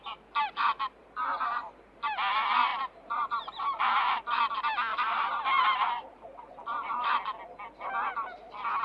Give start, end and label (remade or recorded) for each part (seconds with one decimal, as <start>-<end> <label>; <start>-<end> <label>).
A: 0.0-1.0 recorded; 1.0-1.9 remade; 1.9-2.7 recorded; 2.7-4.2 remade; 4.2-4.9 recorded; 4.9-7.1 remade; 7.1-8.8 recorded